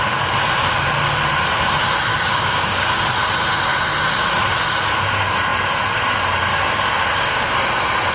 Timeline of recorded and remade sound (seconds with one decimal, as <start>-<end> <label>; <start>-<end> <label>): 0.0-2.1 recorded; 2.1-2.9 remade; 2.9-6.5 recorded; 6.5-7.5 remade; 7.5-8.1 recorded